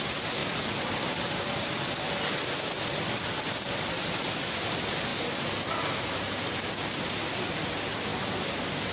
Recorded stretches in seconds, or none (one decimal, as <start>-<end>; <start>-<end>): 0.0-0.4; 1.9-5.1; 5.7-8.9